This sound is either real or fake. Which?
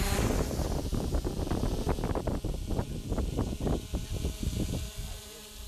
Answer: real